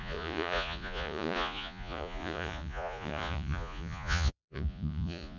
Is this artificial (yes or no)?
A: yes